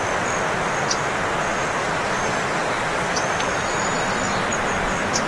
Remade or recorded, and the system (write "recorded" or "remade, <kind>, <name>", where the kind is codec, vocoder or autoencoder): recorded